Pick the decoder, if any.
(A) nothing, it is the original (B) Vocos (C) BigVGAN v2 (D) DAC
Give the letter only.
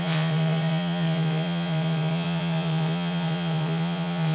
B